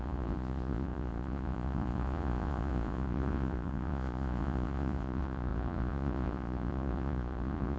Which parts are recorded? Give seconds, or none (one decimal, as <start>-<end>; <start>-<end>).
none